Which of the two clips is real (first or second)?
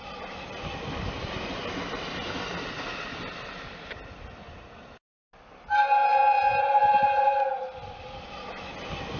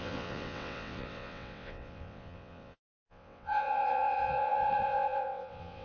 first